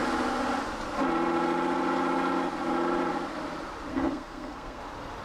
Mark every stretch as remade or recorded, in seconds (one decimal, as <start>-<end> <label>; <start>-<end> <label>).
0.0-3.9 recorded; 3.9-4.8 remade; 4.8-5.2 recorded